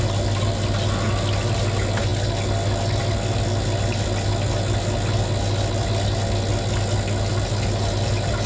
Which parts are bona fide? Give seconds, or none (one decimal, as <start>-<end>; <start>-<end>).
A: 0.0-8.5